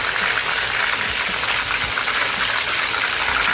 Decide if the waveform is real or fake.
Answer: real